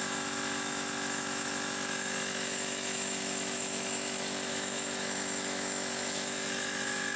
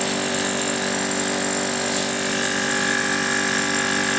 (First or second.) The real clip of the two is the second